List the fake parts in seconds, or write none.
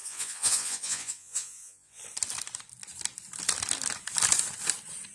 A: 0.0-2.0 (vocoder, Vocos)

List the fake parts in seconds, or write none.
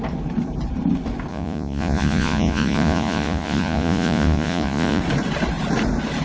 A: 1.3-5.0 (vocoder, Vocos)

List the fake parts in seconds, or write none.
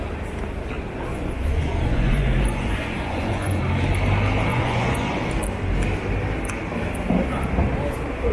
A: 1.1-3.6 (vocoder, Vocos); 4.5-5.2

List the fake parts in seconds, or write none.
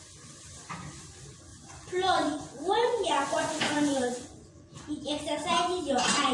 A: 1.5-4.7 (vocoder, Vocos)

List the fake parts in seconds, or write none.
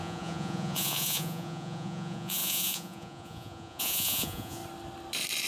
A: 0.0-4.6 (vocoder, Vocos)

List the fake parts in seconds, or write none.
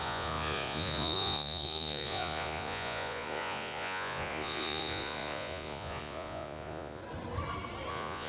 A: 0.0-7.0 (vocoder, Vocos); 7.9-8.3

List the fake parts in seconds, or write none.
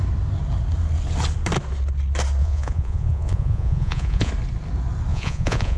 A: 2.4-4.3 (vocoder, Vocos); 5.1-5.8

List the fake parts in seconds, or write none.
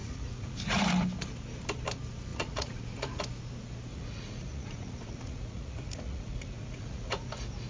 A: 0.0-0.8 (vocoder, Vocos); 2.3-3.2; 3.9-7.3